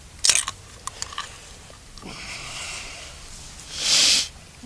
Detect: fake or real real